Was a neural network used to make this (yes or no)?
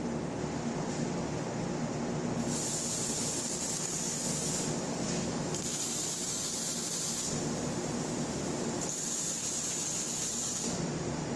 no